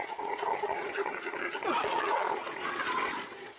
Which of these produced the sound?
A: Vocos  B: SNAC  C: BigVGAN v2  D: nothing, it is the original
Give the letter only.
A